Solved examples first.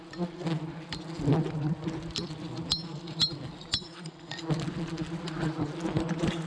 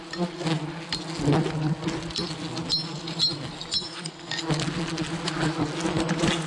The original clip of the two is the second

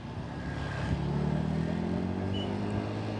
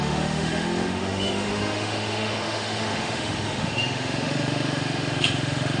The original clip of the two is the first